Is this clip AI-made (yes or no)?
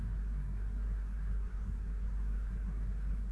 yes